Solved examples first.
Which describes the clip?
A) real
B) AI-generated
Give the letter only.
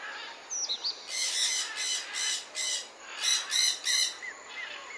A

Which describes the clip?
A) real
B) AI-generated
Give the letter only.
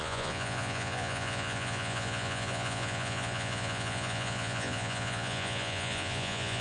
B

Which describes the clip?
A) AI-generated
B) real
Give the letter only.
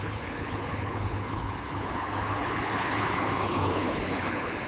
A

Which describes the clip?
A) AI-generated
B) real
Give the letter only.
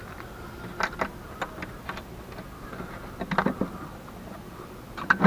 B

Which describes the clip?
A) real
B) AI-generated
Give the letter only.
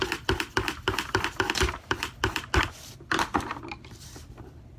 A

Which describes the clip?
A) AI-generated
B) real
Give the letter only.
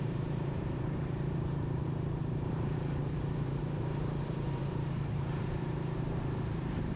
A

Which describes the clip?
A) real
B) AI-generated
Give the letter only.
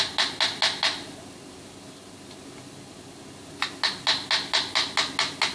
A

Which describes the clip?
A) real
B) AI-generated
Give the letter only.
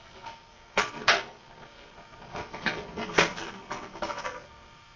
B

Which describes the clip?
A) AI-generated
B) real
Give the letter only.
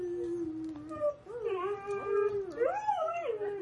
B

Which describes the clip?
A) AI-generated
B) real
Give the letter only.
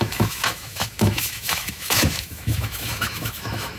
A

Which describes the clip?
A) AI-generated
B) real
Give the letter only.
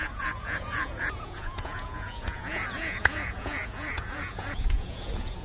A